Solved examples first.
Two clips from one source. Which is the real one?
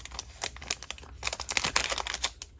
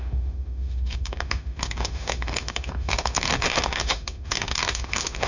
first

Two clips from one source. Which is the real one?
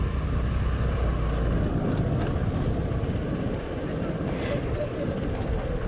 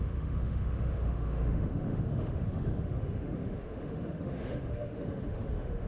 first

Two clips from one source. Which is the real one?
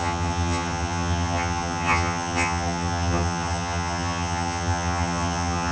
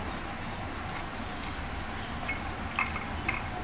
second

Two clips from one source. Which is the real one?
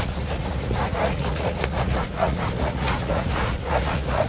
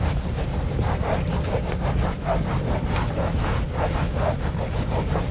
second